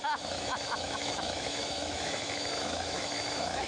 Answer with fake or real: fake